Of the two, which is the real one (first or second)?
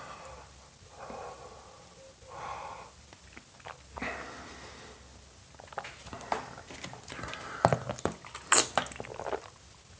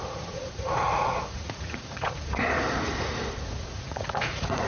first